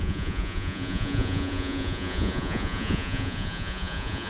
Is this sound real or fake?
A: fake